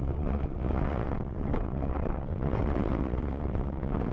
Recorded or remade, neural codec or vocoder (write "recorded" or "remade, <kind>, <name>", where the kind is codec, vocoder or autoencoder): remade, vocoder, WaveNeXt